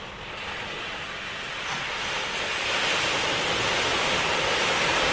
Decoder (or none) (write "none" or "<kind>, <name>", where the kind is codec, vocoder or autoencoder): none